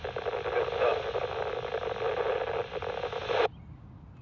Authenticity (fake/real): real